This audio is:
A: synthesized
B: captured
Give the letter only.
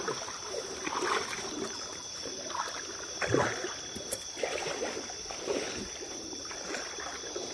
B